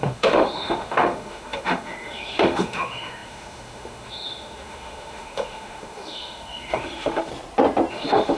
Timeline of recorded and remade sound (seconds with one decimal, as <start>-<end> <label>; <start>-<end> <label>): 0.0-7.3 remade; 7.3-7.9 recorded; 7.9-8.4 remade